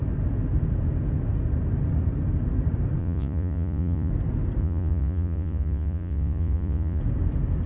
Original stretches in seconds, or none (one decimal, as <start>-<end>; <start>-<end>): 0.0-3.0; 4.1-4.6; 7.0-7.7